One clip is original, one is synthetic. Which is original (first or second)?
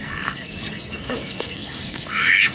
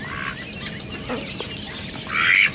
second